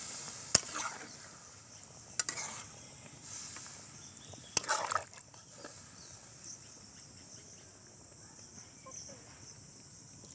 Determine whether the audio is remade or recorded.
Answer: recorded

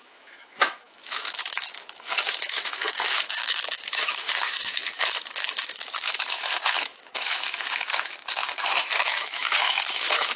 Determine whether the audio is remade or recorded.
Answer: remade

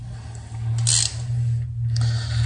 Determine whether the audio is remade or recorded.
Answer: recorded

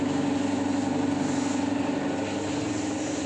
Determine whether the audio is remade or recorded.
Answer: recorded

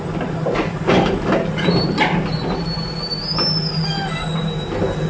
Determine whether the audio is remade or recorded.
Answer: recorded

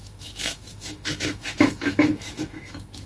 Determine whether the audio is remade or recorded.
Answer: remade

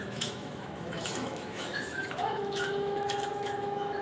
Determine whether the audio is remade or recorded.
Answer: remade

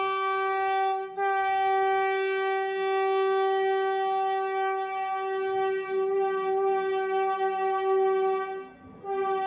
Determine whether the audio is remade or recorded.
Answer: recorded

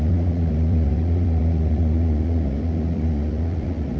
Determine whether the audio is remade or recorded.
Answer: remade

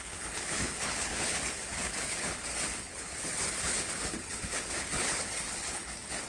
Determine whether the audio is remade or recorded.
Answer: remade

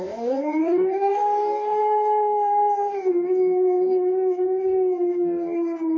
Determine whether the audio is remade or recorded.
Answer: remade